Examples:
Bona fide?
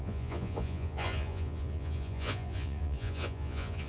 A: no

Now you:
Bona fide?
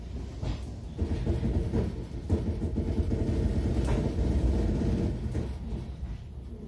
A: yes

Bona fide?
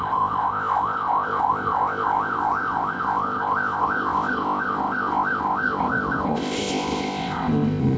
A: no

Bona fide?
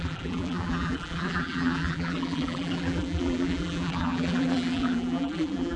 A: no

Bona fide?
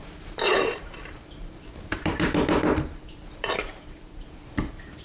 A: no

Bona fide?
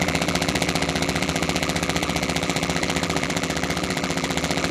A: no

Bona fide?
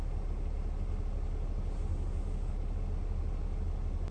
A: yes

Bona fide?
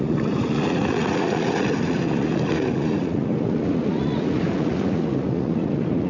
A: no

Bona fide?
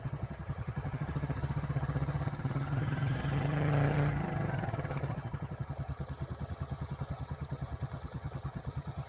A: no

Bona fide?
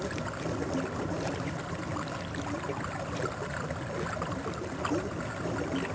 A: yes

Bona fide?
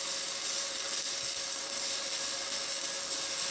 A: yes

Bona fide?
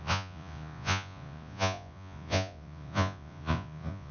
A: no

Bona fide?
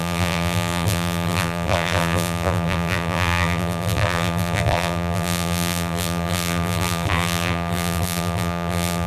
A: no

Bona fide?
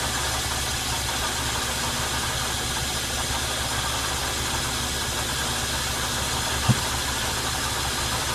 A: yes